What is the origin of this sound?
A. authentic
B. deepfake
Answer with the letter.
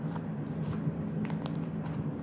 A